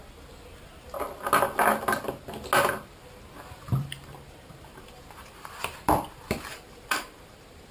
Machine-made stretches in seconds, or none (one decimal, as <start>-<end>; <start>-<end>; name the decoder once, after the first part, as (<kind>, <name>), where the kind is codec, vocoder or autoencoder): 3.7-7.3 (vocoder, BigVGAN v2)